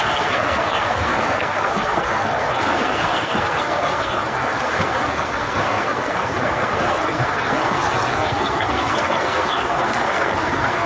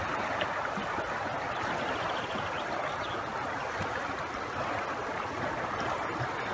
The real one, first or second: second